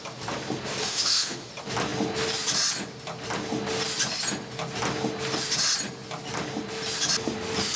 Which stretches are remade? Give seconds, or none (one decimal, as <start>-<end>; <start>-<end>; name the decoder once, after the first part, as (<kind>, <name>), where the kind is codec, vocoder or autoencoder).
0.8-1.5 (autoencoder, DAC-VAE)